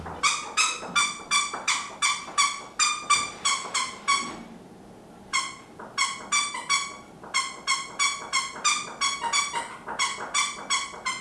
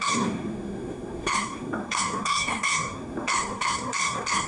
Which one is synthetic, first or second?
second